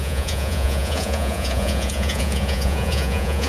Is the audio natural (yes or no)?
no